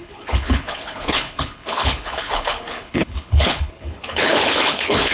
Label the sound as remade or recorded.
remade